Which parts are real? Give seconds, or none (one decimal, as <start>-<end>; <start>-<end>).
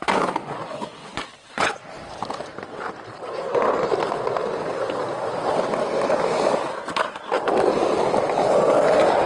0.0-0.4; 1.8-9.3